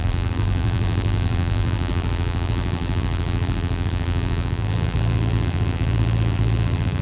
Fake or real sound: fake